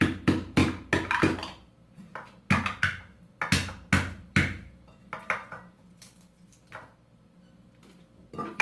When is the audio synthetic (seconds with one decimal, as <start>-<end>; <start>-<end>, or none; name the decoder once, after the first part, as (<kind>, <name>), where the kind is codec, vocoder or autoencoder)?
0.0-0.6 (vocoder, BigVGAN v2); 4.2-8.6